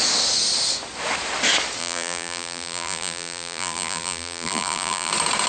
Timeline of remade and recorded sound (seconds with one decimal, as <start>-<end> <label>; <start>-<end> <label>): 0.0-1.8 recorded; 1.8-5.1 remade; 5.1-5.5 recorded